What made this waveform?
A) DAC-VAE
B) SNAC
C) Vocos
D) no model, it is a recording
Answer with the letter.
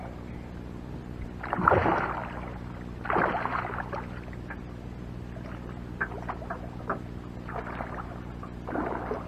D